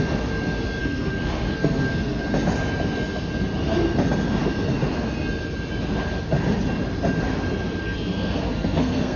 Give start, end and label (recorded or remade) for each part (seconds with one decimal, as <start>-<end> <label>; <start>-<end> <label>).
0.0-0.8 recorded; 0.8-2.2 remade; 2.2-7.8 recorded; 7.8-9.2 remade